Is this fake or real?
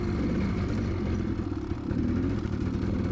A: real